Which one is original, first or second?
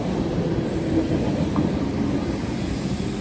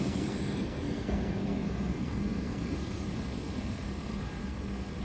first